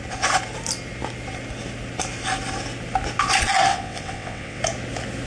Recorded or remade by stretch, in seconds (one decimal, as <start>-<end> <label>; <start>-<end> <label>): 0.0-3.7 recorded; 3.7-4.6 remade; 4.6-5.3 recorded